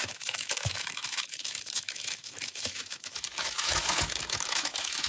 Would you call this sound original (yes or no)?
no